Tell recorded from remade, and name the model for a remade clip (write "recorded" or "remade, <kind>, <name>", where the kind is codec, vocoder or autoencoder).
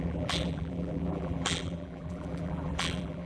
remade, vocoder, BigVGAN v2